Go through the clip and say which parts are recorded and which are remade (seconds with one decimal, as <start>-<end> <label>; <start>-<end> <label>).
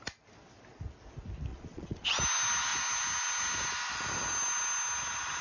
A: 0.0-1.5 recorded; 1.5-2.2 remade; 2.2-5.4 recorded